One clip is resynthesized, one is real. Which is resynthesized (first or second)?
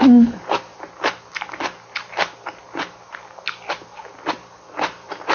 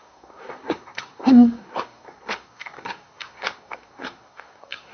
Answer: second